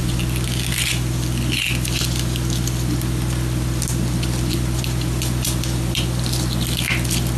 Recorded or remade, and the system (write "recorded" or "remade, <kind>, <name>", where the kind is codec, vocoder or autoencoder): recorded